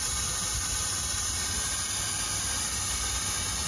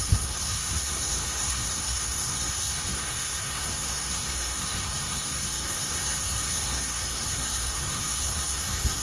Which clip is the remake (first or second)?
second